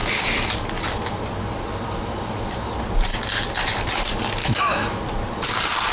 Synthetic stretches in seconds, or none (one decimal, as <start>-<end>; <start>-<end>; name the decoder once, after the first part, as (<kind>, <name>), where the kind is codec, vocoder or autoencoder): 4.4-5.0 (autoencoder, DAC-VAE)